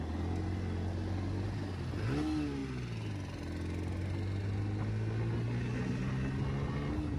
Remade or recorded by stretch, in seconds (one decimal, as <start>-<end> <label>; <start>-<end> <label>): 0.0-7.2 recorded